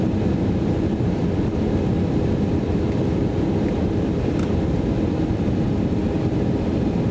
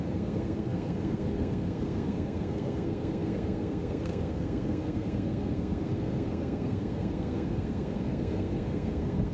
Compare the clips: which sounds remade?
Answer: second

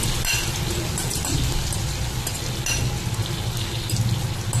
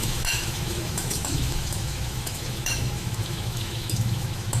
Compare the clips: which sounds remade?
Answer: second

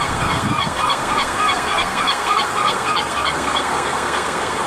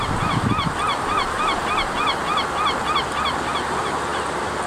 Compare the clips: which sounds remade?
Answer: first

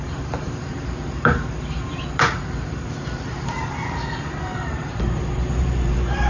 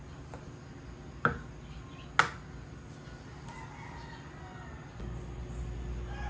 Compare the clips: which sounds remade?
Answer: first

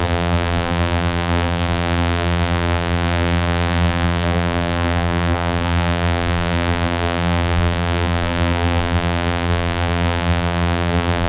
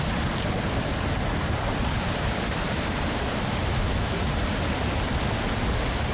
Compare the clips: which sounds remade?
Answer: first